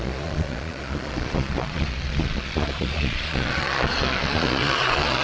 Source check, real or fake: fake